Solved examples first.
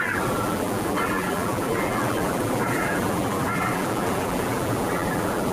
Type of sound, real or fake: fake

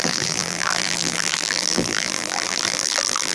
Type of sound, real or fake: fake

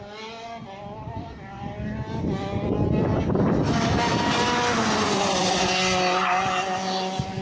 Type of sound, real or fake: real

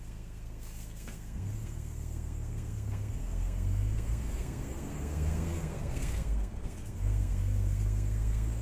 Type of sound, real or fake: fake